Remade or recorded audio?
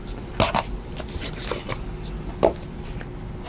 recorded